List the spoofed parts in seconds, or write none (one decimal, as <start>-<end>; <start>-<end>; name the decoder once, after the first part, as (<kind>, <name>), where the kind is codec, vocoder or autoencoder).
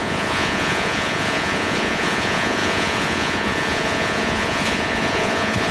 0.0-5.7 (vocoder, Vocos)